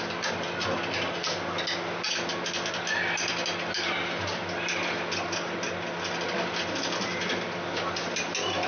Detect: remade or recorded recorded